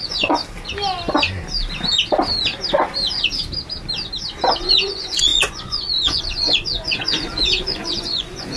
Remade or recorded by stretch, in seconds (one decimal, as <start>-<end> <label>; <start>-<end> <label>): 0.0-0.4 remade; 0.4-4.6 recorded; 4.6-8.6 remade

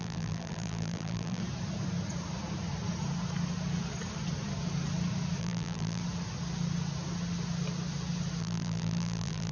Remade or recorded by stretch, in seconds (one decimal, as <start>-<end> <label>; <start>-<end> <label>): 0.0-1.4 remade; 1.4-5.4 recorded; 5.4-6.0 remade; 6.0-8.4 recorded; 8.4-9.5 remade

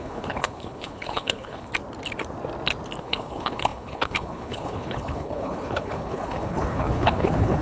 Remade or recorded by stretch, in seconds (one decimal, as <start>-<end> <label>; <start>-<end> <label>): 0.0-1.7 remade; 1.7-3.0 recorded; 3.0-7.6 remade